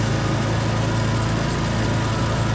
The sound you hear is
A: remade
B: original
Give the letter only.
B